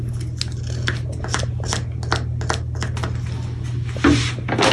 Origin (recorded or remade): recorded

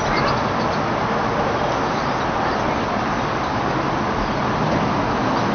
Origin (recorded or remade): recorded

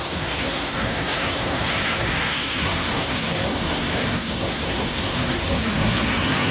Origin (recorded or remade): remade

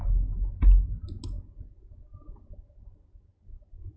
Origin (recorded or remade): recorded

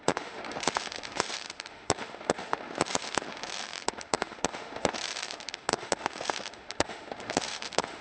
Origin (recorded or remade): remade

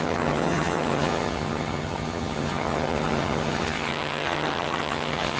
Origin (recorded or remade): remade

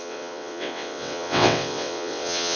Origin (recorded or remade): remade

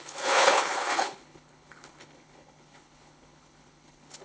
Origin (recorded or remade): remade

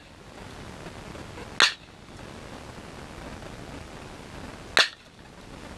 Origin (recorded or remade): recorded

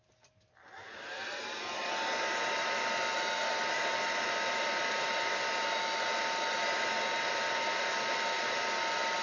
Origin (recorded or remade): recorded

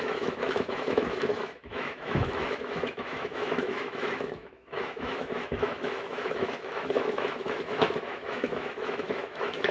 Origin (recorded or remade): remade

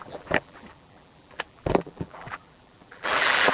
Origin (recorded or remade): remade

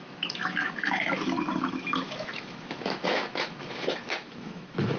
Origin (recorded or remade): remade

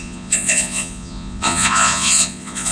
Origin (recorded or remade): remade